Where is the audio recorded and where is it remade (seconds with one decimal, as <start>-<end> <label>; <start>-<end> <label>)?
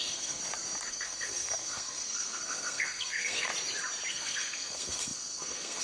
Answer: 0.0-0.4 remade; 0.4-0.9 recorded; 0.9-3.5 remade; 3.5-4.1 recorded; 4.1-5.8 remade